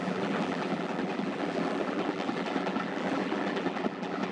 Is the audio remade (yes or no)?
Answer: yes